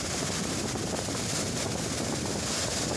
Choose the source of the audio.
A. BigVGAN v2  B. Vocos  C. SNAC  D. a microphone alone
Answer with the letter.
D